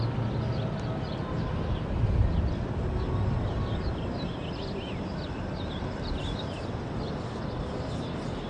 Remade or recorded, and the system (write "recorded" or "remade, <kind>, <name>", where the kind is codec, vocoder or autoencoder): recorded